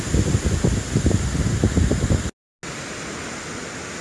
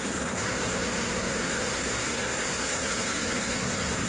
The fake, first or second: second